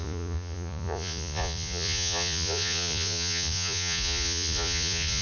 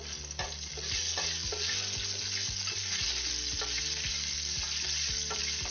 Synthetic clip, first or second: first